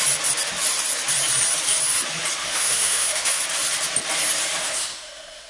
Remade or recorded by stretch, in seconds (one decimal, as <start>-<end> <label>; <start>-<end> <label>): 0.0-2.4 recorded; 2.4-3.4 remade; 3.4-4.6 recorded; 4.6-5.5 remade

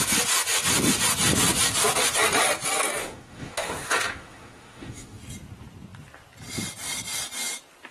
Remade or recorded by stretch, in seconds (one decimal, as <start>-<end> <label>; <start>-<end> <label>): 0.0-3.0 recorded; 3.0-5.2 remade; 5.2-7.9 recorded

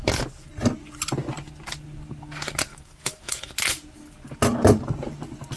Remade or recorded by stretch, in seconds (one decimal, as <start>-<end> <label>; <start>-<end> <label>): 0.0-2.7 recorded; 2.7-3.5 remade; 3.5-5.6 recorded

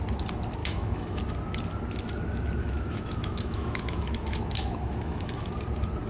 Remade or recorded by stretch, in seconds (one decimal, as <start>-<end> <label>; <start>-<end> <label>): 0.0-0.6 recorded; 0.6-1.2 remade; 1.2-2.6 recorded; 2.6-5.5 remade; 5.5-6.1 recorded

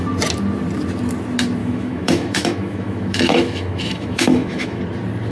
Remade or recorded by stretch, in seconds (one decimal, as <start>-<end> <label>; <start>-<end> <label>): 0.0-1.6 recorded; 1.6-4.8 remade; 4.8-5.3 recorded

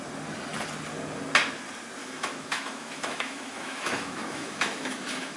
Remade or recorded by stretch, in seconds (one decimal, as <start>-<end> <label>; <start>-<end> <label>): 0.0-2.0 recorded; 2.0-5.4 remade